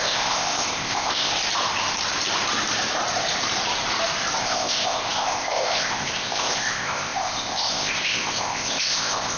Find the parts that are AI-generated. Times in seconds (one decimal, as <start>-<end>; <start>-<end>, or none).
0.0-1.3; 4.4-9.4